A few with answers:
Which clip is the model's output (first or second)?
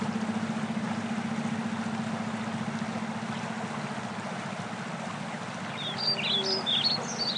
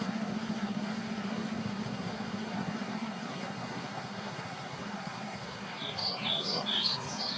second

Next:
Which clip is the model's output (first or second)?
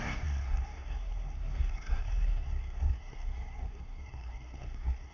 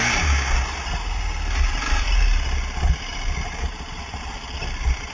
first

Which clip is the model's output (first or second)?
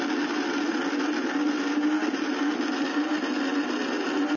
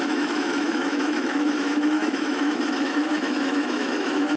second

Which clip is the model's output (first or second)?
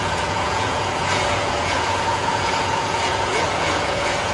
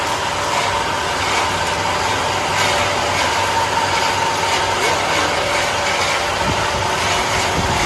first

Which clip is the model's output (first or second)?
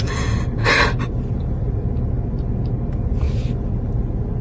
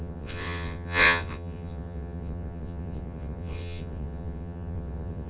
second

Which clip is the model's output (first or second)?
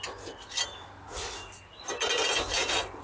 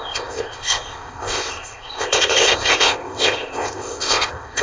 second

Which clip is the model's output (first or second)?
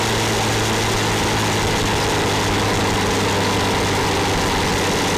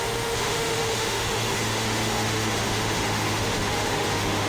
second